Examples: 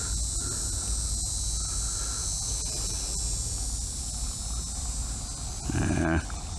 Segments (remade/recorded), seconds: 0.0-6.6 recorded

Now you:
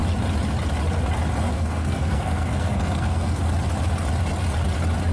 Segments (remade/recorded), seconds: 0.0-1.5 recorded; 1.5-3.4 remade; 3.4-5.1 recorded

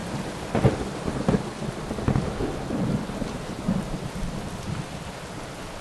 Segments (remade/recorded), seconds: 0.0-5.8 recorded

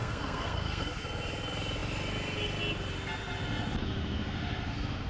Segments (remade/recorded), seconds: 0.0-1.0 remade; 1.0-5.1 recorded